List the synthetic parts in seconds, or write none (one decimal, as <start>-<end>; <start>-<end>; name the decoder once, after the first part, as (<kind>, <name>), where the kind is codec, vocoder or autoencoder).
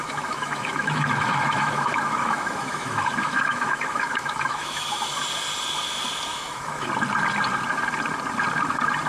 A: 0.0-5.1 (autoencoder, DAC-VAE); 6.3-6.9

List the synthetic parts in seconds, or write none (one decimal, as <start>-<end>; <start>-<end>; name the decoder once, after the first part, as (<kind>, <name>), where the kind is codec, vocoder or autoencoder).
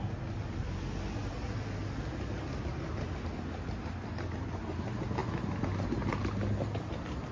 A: none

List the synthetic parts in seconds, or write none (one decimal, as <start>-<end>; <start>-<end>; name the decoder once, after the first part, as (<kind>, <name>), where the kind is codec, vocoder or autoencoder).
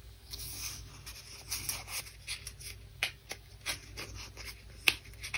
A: 0.0-0.9 (codec, DAC); 2.9-3.5